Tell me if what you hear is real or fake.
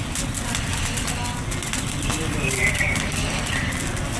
real